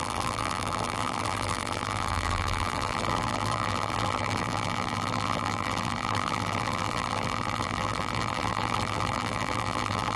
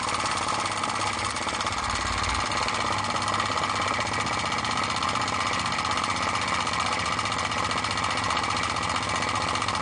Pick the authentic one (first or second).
second